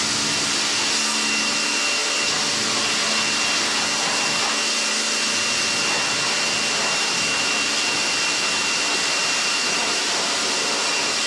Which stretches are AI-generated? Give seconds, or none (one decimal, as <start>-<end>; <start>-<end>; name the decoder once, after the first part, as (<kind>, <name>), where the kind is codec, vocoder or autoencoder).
6.8-7.5 (vocoder, BigVGAN v2); 9.2-10.9